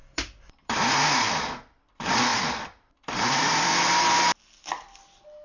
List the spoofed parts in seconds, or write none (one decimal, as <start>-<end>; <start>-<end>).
0.0-0.9; 2.3-3.7